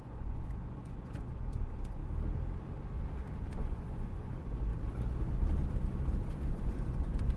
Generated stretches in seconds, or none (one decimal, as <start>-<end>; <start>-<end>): 0.0-2.0; 3.5-4.7; 6.5-7.4